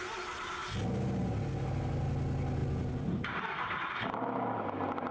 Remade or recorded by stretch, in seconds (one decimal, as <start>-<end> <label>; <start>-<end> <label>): 0.0-5.1 recorded